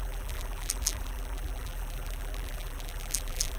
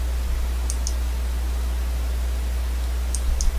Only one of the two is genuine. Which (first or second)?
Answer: second